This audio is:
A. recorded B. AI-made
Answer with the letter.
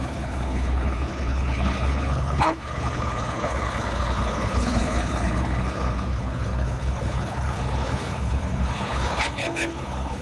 B